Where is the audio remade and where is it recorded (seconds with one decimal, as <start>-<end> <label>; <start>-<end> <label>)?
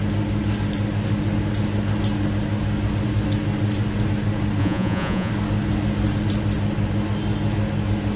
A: 0.0-4.6 recorded; 4.6-5.3 remade; 5.3-8.2 recorded